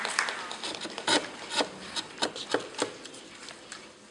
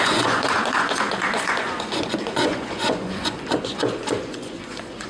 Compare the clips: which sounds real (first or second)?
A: first